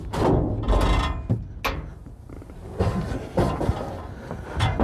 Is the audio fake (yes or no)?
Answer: no